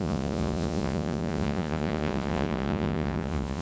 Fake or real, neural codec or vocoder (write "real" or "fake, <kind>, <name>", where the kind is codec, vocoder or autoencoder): fake, vocoder, Vocos